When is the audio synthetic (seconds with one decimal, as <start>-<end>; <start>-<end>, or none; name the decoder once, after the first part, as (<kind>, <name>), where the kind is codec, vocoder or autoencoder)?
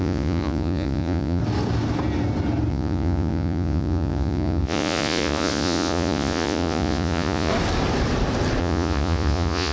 0.0-1.4 (vocoder, Vocos); 2.7-7.5; 8.6-9.7